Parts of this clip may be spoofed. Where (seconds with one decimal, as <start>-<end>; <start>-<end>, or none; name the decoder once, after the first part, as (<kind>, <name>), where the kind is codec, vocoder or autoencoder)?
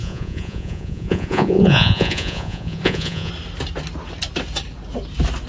0.0-3.3 (vocoder, Vocos)